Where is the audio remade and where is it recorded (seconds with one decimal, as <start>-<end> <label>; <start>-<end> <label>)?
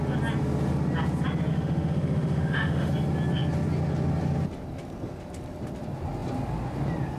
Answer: 0.0-1.5 recorded; 1.5-2.9 remade; 2.9-7.2 recorded